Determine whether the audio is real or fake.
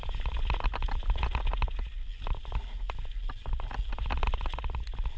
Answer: real